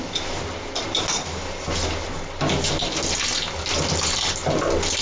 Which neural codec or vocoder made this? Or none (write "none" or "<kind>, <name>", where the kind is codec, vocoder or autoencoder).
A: none